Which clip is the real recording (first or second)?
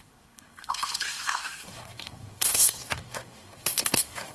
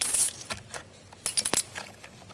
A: second